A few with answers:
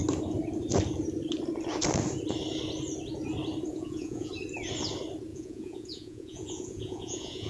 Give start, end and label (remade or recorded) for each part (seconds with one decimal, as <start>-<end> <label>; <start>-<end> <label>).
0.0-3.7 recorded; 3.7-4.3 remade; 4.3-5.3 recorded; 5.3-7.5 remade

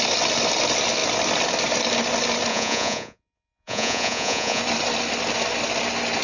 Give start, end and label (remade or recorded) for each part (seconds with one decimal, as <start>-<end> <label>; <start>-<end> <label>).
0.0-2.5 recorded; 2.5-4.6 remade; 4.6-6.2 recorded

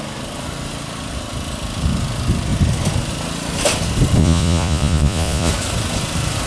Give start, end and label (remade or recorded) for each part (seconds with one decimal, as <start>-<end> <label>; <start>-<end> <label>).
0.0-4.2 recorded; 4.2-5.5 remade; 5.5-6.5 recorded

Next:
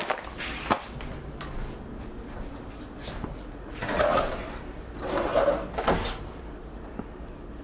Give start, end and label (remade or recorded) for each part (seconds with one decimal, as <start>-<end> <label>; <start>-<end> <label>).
0.0-3.3 recorded; 3.3-4.2 remade; 4.2-7.6 recorded

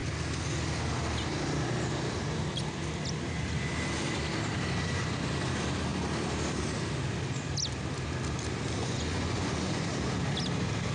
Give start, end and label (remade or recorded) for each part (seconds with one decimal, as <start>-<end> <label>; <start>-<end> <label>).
0.0-8.8 recorded; 8.8-9.9 remade; 9.9-10.9 recorded

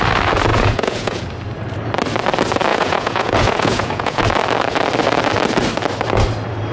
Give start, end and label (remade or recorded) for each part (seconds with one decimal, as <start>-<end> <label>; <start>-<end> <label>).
0.0-0.5 recorded; 0.5-1.2 remade; 1.2-2.7 recorded; 2.7-4.2 remade; 4.2-6.7 recorded

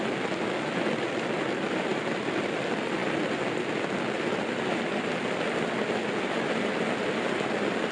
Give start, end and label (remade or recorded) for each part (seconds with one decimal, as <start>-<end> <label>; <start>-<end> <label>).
0.0-7.9 recorded

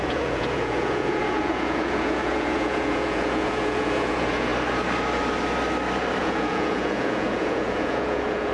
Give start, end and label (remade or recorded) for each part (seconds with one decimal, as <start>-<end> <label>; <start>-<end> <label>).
0.0-4.5 remade; 4.5-6.2 recorded; 6.2-8.5 remade